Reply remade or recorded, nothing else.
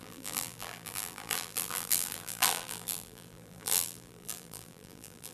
remade